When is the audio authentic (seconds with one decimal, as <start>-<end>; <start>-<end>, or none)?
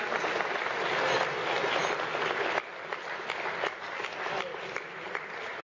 0.0-5.6